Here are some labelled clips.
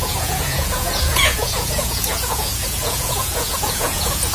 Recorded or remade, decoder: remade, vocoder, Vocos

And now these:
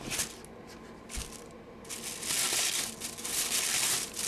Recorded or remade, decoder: recorded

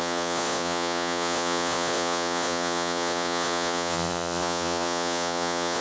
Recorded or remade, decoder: remade, vocoder, Vocos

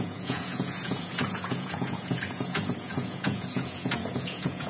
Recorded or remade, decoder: remade, vocoder, Vocos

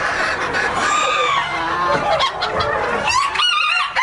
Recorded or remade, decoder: recorded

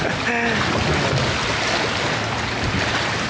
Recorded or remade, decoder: recorded